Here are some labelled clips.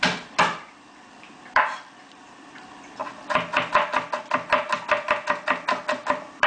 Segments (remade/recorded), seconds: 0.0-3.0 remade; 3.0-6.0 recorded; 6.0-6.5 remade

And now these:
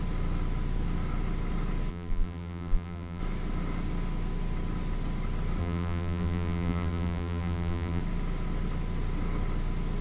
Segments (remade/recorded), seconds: 0.0-1.9 recorded; 1.9-3.2 remade; 3.2-5.6 recorded; 5.6-8.0 remade; 8.0-10.0 recorded

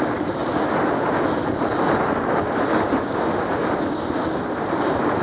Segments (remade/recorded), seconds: 0.0-0.4 remade; 0.4-3.5 recorded; 3.5-5.2 remade

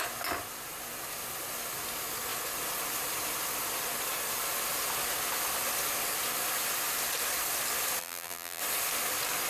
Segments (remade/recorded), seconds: 0.0-8.0 recorded; 8.0-8.6 remade; 8.6-9.5 recorded

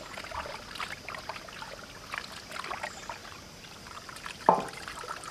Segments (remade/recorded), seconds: 0.0-3.2 recorded; 3.2-5.3 remade

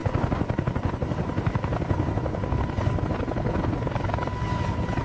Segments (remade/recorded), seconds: 0.0-3.0 remade; 3.0-4.3 recorded; 4.3-5.0 remade

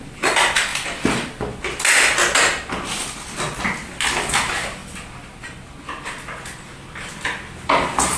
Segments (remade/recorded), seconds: 0.0-0.7 remade; 0.7-4.3 recorded; 4.3-4.8 remade; 4.8-8.2 recorded